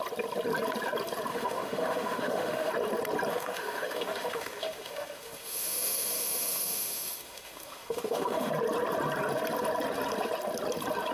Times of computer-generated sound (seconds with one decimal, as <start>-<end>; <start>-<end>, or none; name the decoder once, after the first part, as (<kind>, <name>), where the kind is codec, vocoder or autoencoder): 1.3-2.7 (autoencoder, DAC-VAE); 3.3-8.5